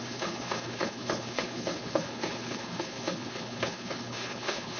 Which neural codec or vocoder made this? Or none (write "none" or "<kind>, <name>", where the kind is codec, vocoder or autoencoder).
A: codec, HILCodec